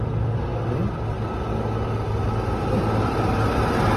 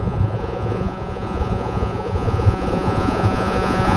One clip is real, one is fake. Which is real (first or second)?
first